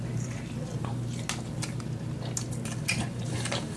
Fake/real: real